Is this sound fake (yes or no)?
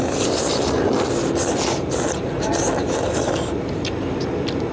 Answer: no